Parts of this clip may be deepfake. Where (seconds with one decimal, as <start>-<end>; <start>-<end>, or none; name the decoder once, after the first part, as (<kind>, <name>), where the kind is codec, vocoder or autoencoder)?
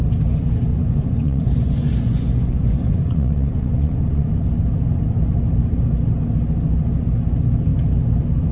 0.7-4.3 (vocoder, Vocos)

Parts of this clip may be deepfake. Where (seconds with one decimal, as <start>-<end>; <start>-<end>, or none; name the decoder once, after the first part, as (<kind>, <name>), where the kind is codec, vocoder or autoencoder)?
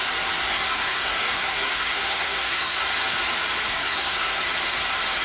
0.5-2.9 (codec, SNAC); 3.7-4.4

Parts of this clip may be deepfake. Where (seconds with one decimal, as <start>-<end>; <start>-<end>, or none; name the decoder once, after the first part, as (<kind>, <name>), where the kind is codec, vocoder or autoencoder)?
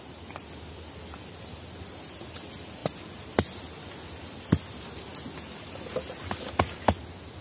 none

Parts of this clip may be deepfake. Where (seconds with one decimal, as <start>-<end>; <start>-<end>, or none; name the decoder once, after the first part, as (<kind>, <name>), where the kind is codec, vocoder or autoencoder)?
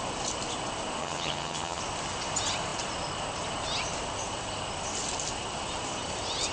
1.0-1.8 (vocoder, HiFi-GAN)